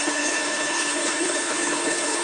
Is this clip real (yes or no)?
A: no